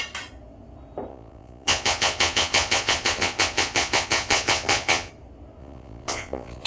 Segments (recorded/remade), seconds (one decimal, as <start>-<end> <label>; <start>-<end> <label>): 0.0-1.1 recorded; 1.1-5.1 remade; 5.1-5.6 recorded; 5.6-6.7 remade